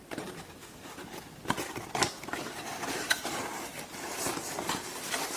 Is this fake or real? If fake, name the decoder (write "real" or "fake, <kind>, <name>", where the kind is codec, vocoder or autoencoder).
fake, vocoder, BigVGAN v2